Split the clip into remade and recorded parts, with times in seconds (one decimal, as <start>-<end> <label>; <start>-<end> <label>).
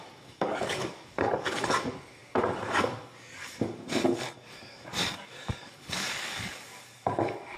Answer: 0.0-7.6 remade